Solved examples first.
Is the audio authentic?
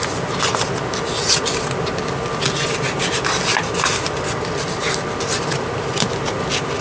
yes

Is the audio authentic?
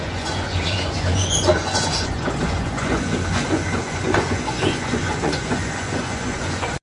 no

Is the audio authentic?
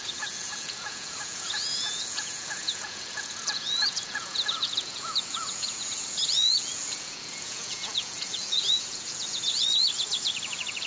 no